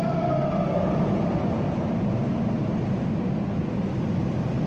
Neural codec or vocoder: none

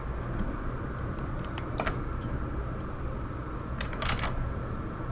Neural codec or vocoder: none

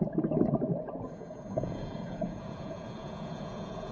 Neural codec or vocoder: vocoder, Vocos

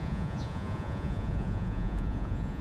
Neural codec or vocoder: vocoder, Vocos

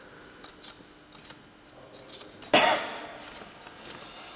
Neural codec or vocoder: none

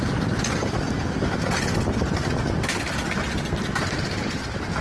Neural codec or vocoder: none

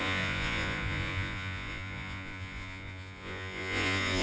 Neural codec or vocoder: vocoder, Vocos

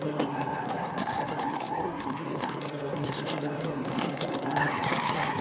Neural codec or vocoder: codec, SNAC